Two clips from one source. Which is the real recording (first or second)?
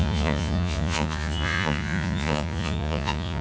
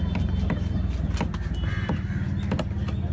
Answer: second